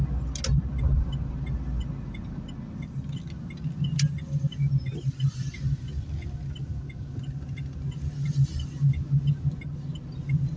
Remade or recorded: recorded